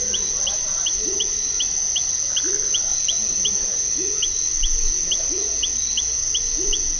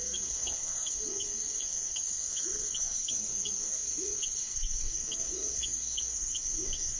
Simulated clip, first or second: second